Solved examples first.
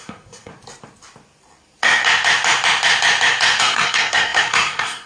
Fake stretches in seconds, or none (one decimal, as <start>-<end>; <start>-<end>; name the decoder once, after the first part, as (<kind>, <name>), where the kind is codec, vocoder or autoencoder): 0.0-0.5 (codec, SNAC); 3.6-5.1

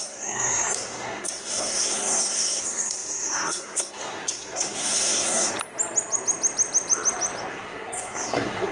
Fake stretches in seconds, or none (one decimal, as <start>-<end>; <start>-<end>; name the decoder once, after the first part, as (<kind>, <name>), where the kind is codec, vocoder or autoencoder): 0.0-5.5 (codec, SNAC); 7.5-8.7

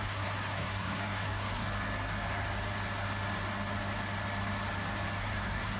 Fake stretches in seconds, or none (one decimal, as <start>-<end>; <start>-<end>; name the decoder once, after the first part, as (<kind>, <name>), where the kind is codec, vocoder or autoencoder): 0.0-1.7 (codec, SNAC); 5.2-5.8

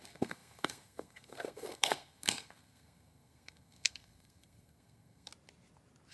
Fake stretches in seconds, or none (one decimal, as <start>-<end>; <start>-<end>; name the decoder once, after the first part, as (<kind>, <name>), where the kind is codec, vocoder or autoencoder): 0.0-5.3 (codec, SNAC)

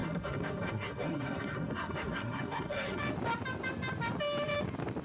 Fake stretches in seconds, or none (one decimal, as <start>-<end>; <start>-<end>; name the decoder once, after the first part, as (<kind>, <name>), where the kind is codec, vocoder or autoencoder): 0.0-3.0 (codec, SNAC)

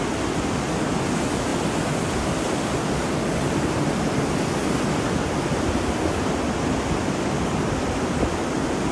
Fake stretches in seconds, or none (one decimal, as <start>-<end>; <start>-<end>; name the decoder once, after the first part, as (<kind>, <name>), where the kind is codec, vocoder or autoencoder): none